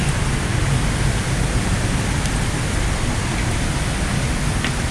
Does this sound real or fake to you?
real